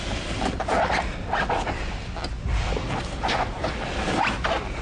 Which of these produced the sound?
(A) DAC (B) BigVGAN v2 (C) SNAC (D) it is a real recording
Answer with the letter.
D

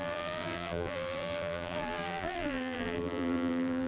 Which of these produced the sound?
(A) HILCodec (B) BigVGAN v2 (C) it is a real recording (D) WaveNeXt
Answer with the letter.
B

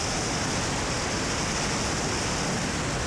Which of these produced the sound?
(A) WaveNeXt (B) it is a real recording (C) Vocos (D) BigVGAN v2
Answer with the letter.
B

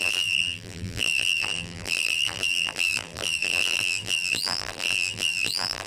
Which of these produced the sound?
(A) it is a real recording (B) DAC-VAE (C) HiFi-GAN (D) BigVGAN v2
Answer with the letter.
D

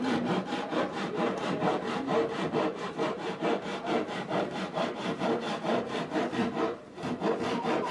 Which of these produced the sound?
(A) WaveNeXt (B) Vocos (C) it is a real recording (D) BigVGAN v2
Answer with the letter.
D